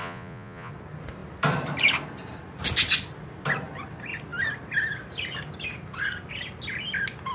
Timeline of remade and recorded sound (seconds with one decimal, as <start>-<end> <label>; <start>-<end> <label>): 0.0-0.7 remade; 0.7-7.3 recorded